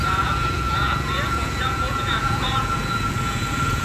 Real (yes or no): no